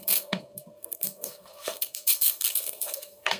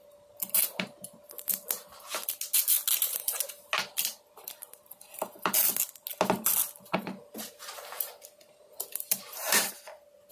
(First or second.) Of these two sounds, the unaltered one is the second